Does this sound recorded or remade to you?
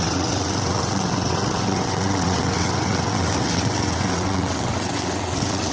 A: remade